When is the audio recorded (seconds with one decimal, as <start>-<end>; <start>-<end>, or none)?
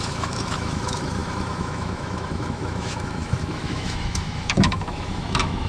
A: none